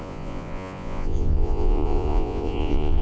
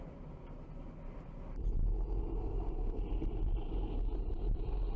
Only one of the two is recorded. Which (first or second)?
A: second